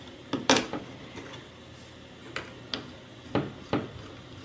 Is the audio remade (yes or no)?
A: no